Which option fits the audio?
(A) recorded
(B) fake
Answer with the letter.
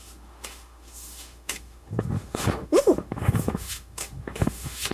B